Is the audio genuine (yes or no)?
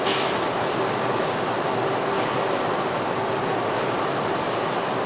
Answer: yes